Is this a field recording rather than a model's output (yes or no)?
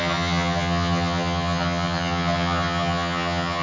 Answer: no